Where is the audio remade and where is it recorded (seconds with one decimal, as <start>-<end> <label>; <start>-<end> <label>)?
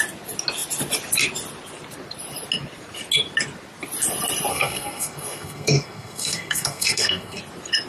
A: 0.0-4.5 recorded; 4.5-7.4 remade; 7.4-7.9 recorded